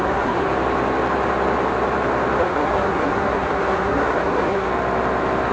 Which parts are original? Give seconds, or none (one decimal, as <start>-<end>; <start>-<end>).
0.5-2.4; 4.7-5.5

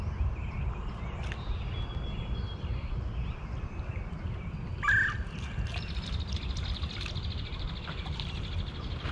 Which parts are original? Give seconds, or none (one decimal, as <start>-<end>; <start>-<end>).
0.0-9.1

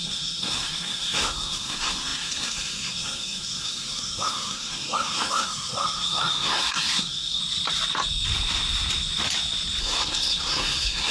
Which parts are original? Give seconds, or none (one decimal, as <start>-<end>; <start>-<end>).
7.4-9.8

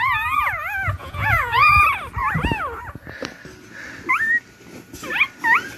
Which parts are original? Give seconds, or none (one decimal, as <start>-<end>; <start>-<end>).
0.0-1.0; 1.8-5.8

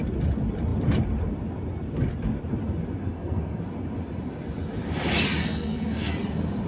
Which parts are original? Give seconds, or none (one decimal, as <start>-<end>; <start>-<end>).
0.0-3.0; 3.6-5.4; 6.1-6.7

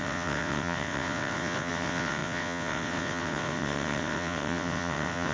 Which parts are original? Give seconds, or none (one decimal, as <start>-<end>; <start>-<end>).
none

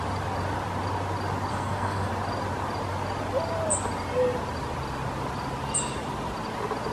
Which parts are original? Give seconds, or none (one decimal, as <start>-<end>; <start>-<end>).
0.0-1.5; 2.1-6.9